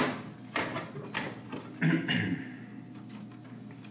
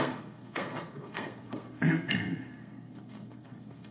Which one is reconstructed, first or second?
second